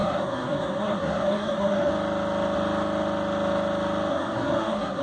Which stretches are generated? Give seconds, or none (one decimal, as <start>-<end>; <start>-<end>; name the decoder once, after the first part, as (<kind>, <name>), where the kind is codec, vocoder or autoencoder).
0.0-1.9 (codec, SNAC); 4.1-5.0